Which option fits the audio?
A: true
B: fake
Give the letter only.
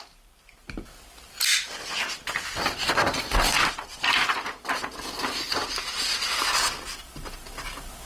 A